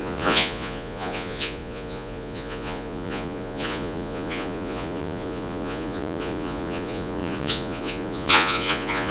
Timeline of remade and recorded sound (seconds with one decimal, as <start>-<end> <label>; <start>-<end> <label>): 0.0-9.1 remade